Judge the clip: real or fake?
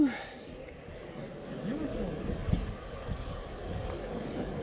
fake